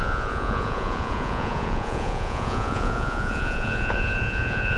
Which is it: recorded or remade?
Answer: remade